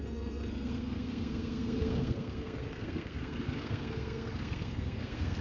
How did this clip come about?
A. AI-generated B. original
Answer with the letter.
A